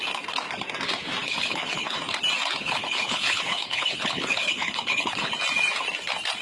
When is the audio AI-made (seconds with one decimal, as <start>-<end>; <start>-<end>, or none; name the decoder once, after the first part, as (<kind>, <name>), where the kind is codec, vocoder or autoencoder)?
1.2-2.0 (codec, HILCodec); 2.6-5.3